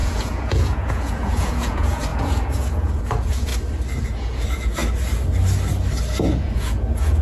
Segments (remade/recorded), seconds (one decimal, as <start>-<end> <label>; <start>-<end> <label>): 0.0-3.5 remade; 3.5-4.0 recorded; 4.0-4.8 remade; 4.8-6.4 recorded; 6.4-7.2 remade